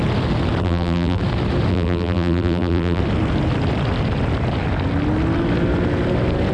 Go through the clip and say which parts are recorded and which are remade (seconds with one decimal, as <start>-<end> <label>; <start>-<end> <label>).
0.0-0.6 recorded; 0.6-1.2 remade; 1.2-1.7 recorded; 1.7-3.0 remade; 3.0-6.5 recorded